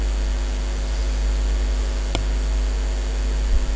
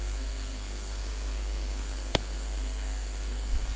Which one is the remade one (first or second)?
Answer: second